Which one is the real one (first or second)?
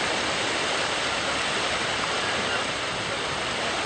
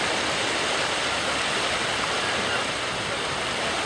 second